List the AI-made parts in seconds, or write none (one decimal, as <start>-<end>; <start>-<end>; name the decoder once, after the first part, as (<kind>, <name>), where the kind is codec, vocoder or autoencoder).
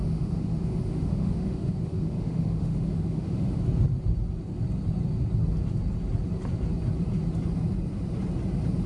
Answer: 0.0-3.6 (autoencoder, DAC-VAE)